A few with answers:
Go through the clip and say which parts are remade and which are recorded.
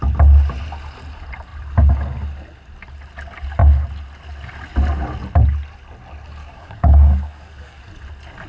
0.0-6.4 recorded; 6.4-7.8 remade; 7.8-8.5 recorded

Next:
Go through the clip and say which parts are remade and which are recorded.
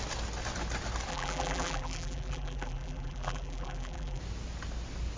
0.0-1.1 recorded; 1.1-4.2 remade; 4.2-5.2 recorded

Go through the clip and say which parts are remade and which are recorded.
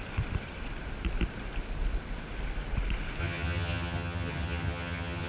0.0-3.2 recorded; 3.2-5.3 remade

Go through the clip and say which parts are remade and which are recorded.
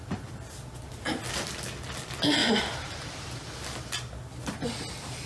0.0-2.4 recorded; 2.4-3.5 remade; 3.5-5.3 recorded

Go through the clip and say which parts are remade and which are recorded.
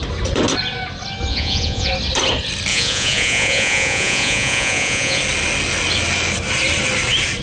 0.0-1.3 recorded; 1.3-1.9 remade; 1.9-2.7 recorded; 2.7-5.2 remade; 5.2-7.4 recorded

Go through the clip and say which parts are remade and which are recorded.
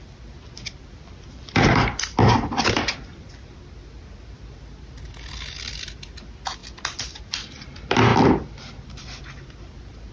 0.0-0.8 recorded; 0.8-3.5 remade; 3.5-8.1 recorded; 8.1-9.2 remade; 9.2-10.1 recorded